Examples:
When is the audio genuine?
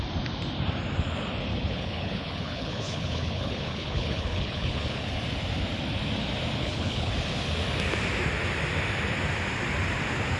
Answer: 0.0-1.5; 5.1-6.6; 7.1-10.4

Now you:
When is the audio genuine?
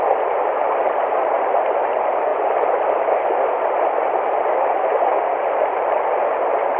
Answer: 0.0-6.8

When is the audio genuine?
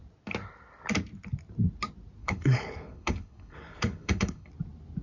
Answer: 0.0-2.2; 4.5-5.0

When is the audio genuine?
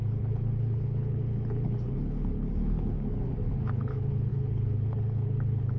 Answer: none